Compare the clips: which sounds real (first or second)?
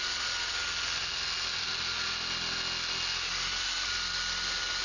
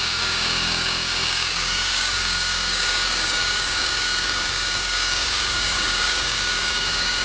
first